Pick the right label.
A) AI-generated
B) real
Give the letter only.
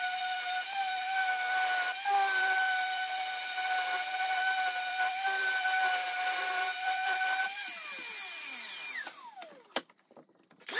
A